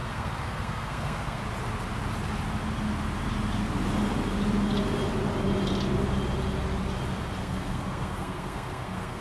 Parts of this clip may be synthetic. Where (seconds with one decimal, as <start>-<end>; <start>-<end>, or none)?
0.0-1.4; 7.4-9.2

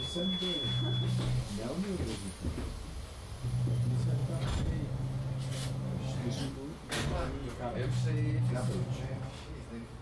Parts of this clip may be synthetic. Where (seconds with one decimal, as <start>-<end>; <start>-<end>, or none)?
none

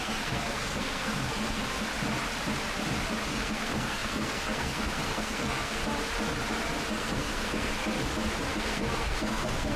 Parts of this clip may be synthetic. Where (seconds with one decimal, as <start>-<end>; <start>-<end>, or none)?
0.0-1.9; 3.2-5.8; 6.9-7.7; 8.5-9.8

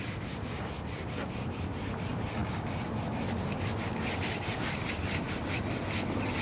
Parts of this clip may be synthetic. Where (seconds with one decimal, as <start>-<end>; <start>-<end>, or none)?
none

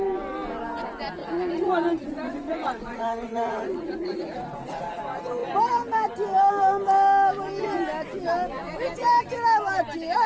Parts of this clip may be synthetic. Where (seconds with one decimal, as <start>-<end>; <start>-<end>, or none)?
1.2-5.0

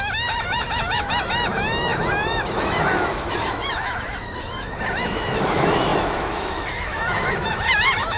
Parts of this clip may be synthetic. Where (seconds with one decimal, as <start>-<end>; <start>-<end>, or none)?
0.0-8.2